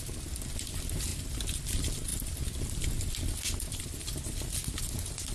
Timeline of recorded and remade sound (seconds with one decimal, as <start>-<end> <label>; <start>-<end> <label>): 0.0-5.3 recorded